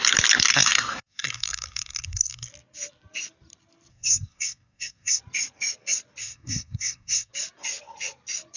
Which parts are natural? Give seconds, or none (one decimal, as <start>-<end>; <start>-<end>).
0.0-0.5; 2.5-3.9; 5.2-6.2; 7.3-8.6